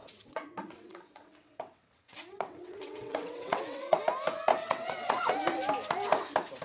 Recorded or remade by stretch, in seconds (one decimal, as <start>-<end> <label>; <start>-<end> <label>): 0.0-4.0 remade; 4.0-4.5 recorded; 4.5-5.3 remade; 5.3-6.6 recorded